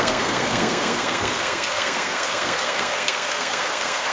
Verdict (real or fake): fake